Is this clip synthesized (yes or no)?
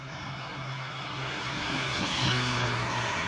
yes